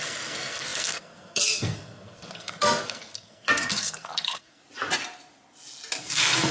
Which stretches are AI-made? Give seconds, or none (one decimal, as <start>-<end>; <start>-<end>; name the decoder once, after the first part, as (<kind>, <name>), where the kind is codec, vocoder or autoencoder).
0.0-4.6 (codec, SNAC); 6.0-6.5